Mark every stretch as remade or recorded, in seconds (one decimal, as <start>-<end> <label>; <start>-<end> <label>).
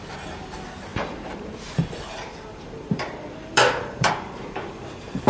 0.0-0.9 recorded; 0.9-4.1 remade; 4.1-5.3 recorded